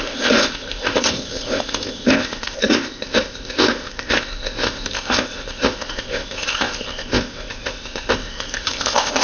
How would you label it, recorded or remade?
remade